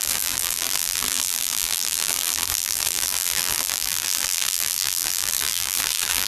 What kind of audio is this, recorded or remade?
remade